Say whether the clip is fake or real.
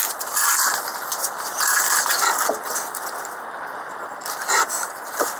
real